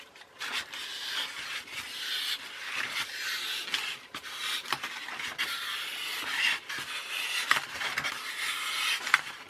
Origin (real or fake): real